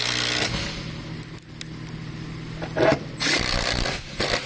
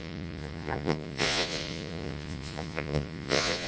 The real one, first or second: first